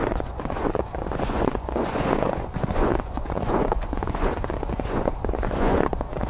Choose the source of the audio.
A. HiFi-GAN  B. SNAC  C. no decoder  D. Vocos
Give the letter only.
D